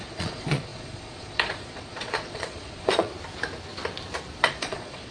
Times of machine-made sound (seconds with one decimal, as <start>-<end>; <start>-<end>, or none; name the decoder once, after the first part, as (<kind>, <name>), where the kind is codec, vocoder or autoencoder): 0.0-3.1 (vocoder, Vocos); 4.4-5.1